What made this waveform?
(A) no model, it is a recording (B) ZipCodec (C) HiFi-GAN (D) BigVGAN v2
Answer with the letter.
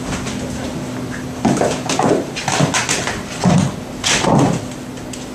A